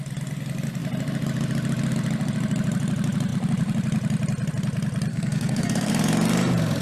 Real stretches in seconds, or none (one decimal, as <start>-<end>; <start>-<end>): 0.0-5.1; 5.9-6.8